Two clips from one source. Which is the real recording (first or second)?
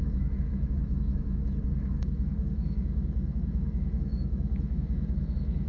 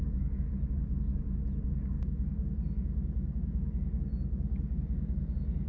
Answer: second